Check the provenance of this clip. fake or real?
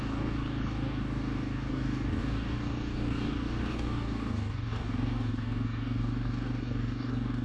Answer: fake